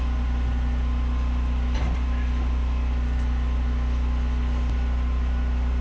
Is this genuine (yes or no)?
yes